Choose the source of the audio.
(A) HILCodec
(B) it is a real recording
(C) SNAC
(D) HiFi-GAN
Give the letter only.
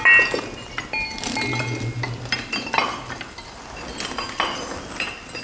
B